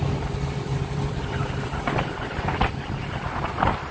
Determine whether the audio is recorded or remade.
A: remade